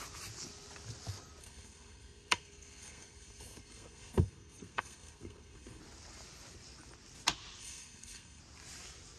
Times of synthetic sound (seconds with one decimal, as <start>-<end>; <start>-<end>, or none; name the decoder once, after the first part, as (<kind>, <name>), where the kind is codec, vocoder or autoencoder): 1.4-5.8 (codec, SNAC); 7.6-8.4